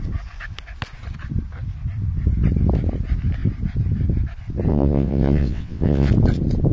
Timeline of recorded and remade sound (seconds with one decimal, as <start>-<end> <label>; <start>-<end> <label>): 0.0-4.7 recorded; 4.7-6.1 remade; 6.1-6.7 recorded